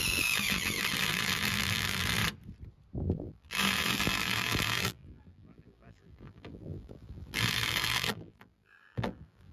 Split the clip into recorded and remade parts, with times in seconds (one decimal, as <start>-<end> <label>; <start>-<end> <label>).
0.0-2.2 remade; 2.2-3.0 recorded; 3.0-9.5 remade